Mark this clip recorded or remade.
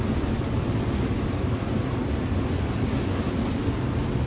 recorded